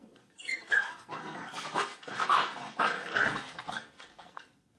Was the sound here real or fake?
fake